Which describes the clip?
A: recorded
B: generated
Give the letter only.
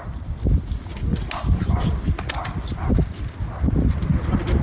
B